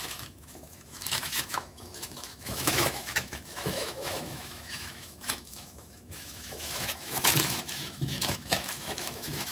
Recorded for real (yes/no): no